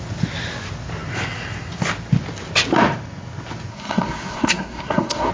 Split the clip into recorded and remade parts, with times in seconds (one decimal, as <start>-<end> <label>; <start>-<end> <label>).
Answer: 0.0-3.7 recorded; 3.7-5.3 remade